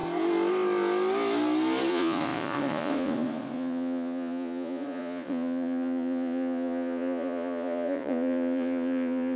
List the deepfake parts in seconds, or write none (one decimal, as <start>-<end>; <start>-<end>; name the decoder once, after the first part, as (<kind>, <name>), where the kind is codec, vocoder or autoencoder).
1.9-9.4 (vocoder, Vocos)